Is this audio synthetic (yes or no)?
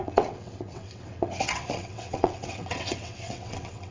yes